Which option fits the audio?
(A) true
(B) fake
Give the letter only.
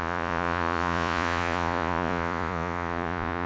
B